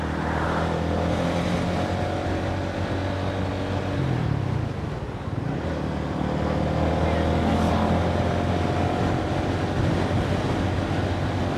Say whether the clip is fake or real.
real